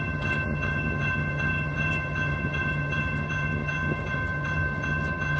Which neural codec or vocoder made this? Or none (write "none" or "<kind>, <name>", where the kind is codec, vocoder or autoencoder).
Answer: vocoder, HiFi-GAN